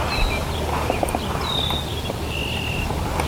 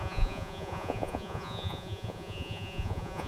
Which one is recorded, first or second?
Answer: first